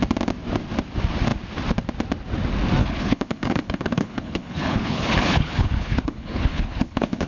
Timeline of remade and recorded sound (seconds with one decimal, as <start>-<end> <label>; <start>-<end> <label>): 0.0-2.8 recorded; 2.8-7.3 remade